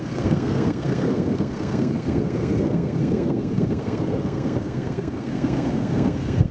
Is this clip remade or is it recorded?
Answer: remade